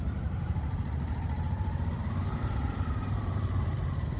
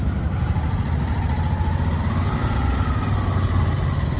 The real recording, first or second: second